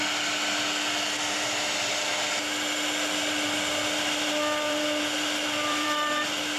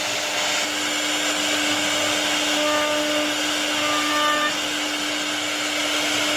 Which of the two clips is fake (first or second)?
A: first